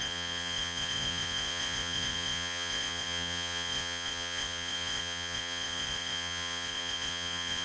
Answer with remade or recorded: remade